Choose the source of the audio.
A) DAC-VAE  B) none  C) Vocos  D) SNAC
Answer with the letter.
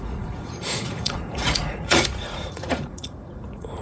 C